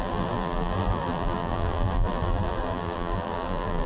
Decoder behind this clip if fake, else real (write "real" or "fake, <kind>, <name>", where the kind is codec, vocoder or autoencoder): fake, vocoder, BigVGAN v2